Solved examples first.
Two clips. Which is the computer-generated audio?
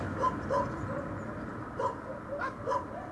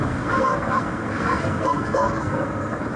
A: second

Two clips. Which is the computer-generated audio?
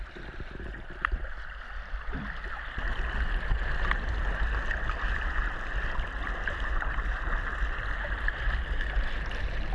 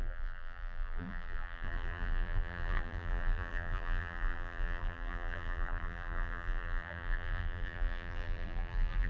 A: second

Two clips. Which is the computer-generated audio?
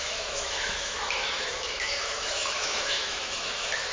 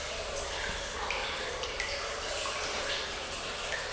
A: first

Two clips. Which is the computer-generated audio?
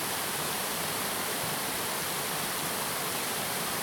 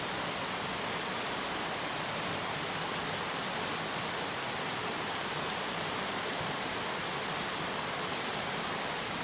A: first